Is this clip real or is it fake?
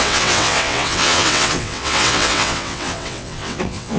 fake